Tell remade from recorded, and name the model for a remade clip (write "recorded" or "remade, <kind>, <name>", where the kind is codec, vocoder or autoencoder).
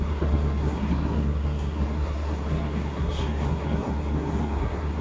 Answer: remade, codec, SNAC